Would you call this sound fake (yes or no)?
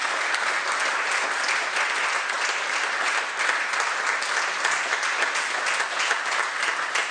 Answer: no